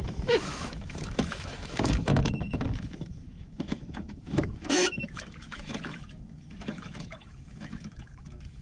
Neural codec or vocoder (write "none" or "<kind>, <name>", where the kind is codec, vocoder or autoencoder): autoencoder, DAC-VAE